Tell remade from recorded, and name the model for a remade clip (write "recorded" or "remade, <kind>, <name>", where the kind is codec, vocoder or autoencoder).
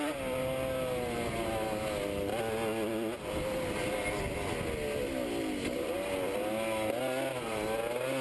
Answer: recorded